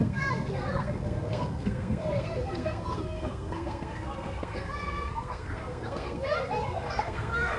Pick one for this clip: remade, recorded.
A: remade